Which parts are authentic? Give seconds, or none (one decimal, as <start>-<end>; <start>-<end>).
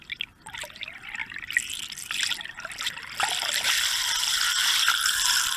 0.0-5.6